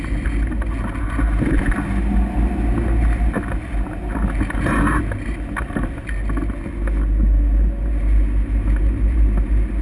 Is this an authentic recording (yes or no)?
yes